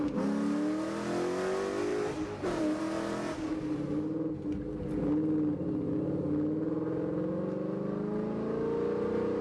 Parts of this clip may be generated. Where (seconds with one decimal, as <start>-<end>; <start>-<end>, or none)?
1.9-2.8